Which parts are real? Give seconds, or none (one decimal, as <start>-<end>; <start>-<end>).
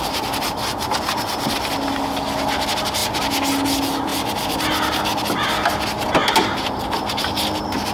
0.0-7.9